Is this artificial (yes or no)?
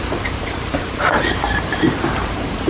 yes